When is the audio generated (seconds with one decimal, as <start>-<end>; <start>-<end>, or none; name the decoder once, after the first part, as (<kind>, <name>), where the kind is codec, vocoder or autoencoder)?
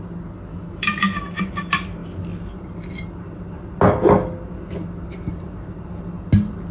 0.5-1.5 (autoencoder, DAC-VAE)